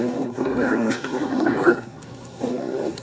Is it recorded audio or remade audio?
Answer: remade